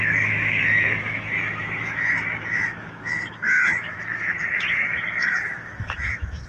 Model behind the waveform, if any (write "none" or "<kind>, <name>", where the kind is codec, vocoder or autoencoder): autoencoder, DAC-VAE